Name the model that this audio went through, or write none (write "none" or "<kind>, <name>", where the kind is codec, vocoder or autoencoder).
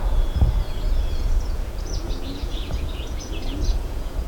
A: vocoder, Vocos